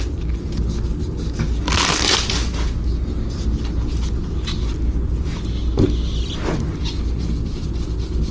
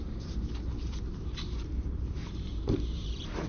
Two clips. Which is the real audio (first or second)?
first